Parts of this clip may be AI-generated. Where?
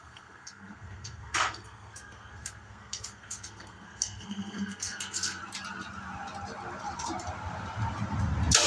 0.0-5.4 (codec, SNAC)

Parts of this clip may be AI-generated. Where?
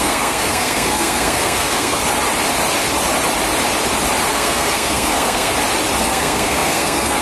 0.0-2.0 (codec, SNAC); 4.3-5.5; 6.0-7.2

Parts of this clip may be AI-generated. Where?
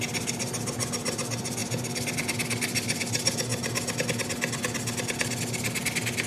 none